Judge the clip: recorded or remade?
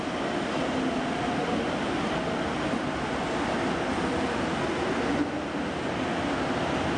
recorded